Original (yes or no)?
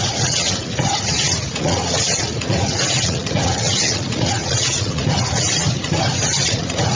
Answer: no